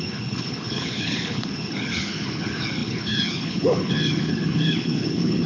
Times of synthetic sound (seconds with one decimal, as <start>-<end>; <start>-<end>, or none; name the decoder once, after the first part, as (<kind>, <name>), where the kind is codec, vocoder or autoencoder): 0.0-5.5 (codec, HILCodec)